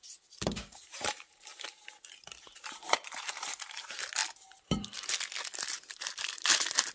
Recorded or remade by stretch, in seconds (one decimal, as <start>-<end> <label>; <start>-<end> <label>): 0.0-1.5 remade; 1.5-2.4 recorded; 2.4-4.2 remade; 4.2-5.6 recorded; 5.6-6.9 remade